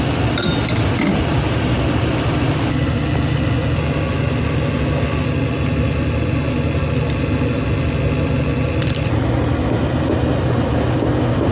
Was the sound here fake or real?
real